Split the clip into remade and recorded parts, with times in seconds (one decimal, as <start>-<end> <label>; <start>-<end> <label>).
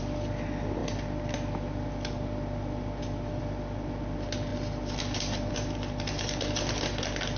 0.0-7.4 recorded